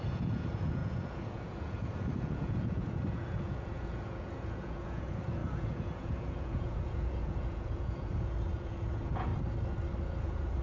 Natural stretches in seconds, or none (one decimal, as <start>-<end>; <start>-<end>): 9.3-10.2